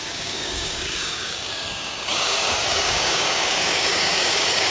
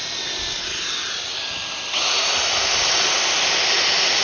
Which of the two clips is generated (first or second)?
first